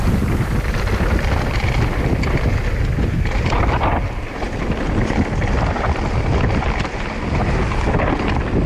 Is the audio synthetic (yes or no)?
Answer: no